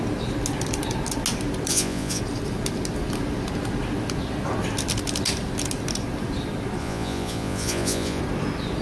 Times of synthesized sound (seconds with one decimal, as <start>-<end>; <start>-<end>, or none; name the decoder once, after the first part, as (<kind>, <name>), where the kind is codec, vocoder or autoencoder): 1.7-2.2 (vocoder, Vocos); 6.8-8.2